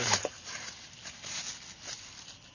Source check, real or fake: real